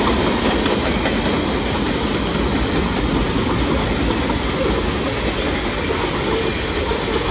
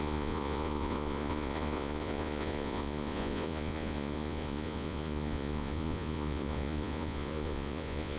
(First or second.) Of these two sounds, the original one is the first